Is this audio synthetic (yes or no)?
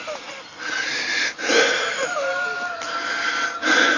no